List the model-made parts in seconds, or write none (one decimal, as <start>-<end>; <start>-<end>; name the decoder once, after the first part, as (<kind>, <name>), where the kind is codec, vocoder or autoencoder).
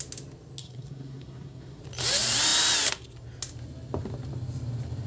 0.6-1.8 (codec, SNAC)